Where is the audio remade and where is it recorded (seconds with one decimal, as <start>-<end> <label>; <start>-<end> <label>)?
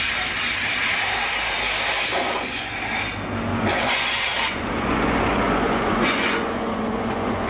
0.0-2.1 recorded; 2.1-2.7 remade; 2.7-3.5 recorded; 3.5-7.5 remade